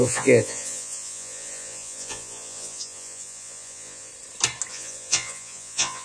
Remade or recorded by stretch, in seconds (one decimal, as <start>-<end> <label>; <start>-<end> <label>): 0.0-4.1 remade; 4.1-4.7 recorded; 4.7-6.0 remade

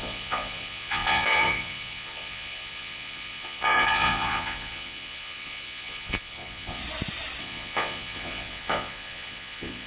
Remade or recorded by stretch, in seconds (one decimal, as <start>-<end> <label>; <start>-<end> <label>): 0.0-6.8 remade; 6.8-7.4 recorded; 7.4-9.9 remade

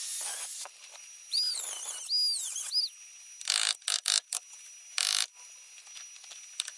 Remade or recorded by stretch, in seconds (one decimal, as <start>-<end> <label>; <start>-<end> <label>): 0.0-0.5 recorded; 0.5-1.8 remade; 1.8-6.8 recorded